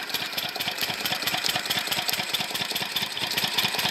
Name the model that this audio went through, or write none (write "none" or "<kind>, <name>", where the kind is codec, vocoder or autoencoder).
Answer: vocoder, BigVGAN v2